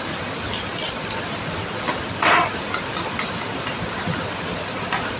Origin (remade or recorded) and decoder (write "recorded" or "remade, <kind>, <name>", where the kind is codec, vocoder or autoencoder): remade, vocoder, BigVGAN v2